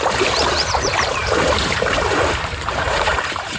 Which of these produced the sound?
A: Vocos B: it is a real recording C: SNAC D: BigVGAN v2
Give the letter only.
D